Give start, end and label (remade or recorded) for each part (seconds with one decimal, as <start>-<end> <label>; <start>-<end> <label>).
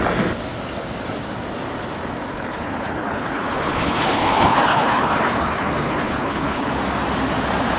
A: 0.0-2.3 recorded; 2.3-6.7 remade; 6.7-7.8 recorded